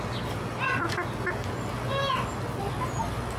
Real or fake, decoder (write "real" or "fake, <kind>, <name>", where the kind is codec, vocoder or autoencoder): real